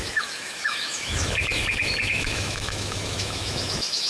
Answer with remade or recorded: remade